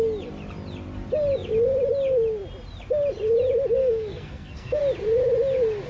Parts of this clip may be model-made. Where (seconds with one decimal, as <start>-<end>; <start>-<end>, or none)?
3.8-4.8